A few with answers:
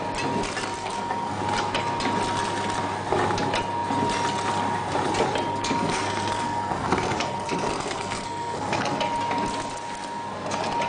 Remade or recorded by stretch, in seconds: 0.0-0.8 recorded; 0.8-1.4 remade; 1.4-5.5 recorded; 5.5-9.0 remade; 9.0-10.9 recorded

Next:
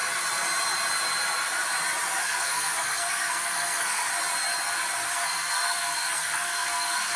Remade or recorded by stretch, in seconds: 0.0-2.2 recorded; 2.2-4.1 remade; 4.1-5.1 recorded; 5.1-7.2 remade

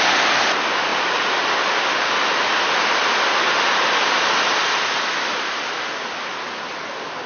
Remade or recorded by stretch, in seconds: 0.0-7.3 recorded

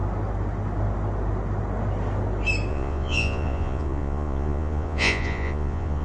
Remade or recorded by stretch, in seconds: 0.0-2.7 recorded; 2.7-6.0 remade

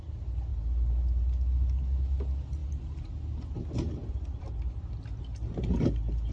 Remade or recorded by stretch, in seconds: 0.0-6.3 recorded

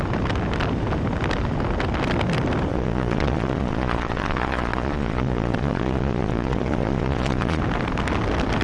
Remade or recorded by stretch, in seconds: 0.0-2.7 recorded; 2.7-7.6 remade; 7.6-8.6 recorded

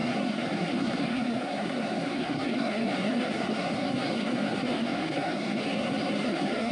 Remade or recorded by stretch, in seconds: 0.0-6.7 remade